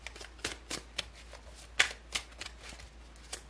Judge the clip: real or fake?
real